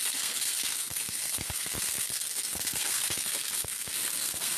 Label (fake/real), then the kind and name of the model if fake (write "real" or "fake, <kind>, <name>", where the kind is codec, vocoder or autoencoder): fake, codec, SNAC